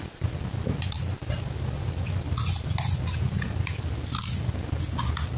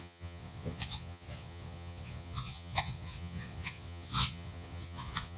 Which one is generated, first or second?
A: second